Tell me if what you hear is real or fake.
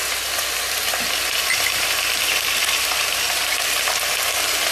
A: fake